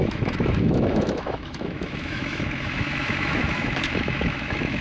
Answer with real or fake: fake